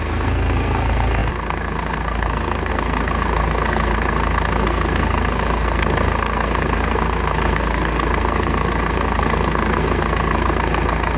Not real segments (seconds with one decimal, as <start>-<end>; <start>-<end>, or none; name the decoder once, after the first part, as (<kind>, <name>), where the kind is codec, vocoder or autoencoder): 0.0-11.2 (codec, SNAC)